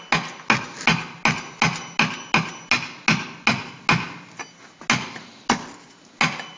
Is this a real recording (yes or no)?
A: yes